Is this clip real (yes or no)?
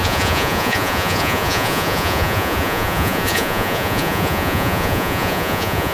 no